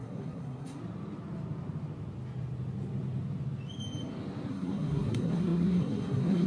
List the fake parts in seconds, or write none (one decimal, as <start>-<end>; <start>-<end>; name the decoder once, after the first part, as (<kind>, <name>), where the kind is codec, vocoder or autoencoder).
0.0-0.8 (codec, SNAC); 4.5-6.5